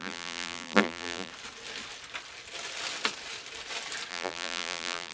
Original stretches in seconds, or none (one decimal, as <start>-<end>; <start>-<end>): 1.3-4.1